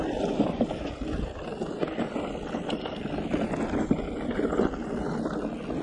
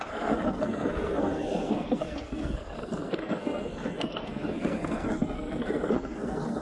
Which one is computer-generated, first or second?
second